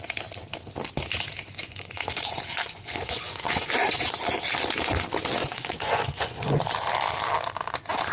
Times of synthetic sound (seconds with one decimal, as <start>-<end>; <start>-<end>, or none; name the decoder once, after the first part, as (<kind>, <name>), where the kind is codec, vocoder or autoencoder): 1.6-2.2 (vocoder, Vocos); 2.6-3.7; 5.4-6.6